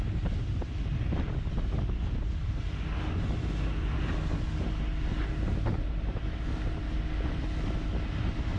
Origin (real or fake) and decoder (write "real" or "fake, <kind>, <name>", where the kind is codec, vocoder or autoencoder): real